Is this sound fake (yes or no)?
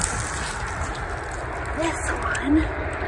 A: no